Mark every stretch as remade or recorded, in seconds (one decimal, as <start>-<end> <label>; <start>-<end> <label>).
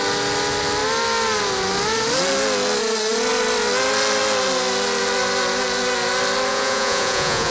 0.0-6.5 recorded; 6.5-7.5 remade